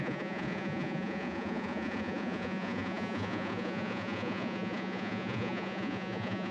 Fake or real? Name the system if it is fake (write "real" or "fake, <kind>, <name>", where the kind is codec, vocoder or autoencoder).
fake, vocoder, Vocos